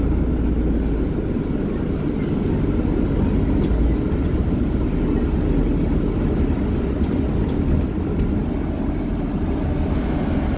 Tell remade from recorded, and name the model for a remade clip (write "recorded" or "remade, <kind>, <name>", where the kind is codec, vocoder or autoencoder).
recorded